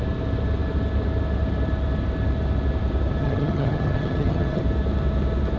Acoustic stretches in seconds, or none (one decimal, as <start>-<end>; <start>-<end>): 0.0-3.2; 4.6-5.6